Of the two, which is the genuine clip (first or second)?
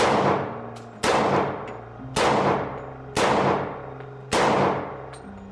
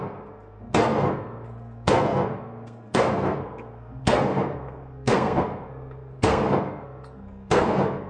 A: first